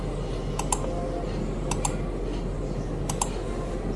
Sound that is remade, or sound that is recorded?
recorded